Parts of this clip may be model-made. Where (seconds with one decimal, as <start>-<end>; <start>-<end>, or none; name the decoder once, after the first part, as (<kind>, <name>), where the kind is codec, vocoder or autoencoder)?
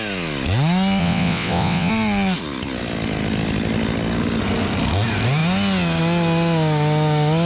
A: 1.0-1.9 (vocoder, WaveNeXt)